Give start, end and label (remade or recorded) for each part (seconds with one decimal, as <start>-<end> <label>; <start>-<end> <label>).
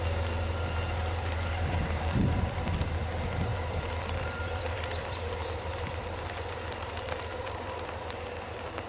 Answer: 0.0-1.0 recorded; 1.0-3.0 remade; 3.0-3.5 recorded; 3.5-8.0 remade; 8.0-8.9 recorded